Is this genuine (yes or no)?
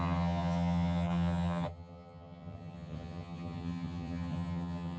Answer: no